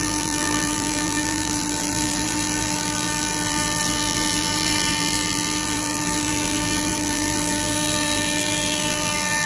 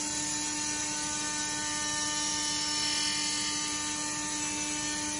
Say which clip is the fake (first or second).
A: first